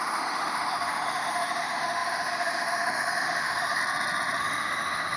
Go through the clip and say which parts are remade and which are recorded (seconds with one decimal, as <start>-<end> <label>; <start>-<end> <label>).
0.0-3.8 remade; 3.8-4.4 recorded; 4.4-5.2 remade